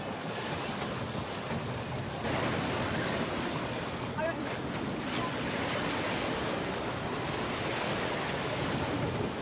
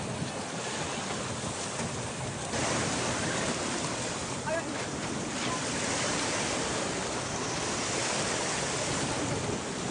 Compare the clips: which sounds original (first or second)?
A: first